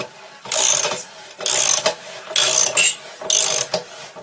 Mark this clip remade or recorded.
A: recorded